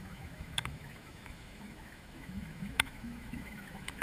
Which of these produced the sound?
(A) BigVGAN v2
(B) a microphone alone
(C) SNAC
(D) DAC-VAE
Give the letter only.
D